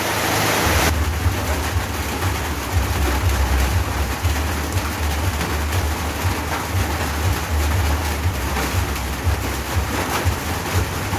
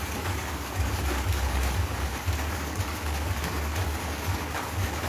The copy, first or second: second